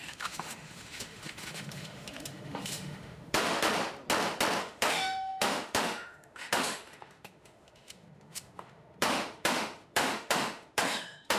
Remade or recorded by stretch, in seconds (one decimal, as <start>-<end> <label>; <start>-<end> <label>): 0.0-3.7 remade; 3.7-4.6 recorded; 4.6-11.4 remade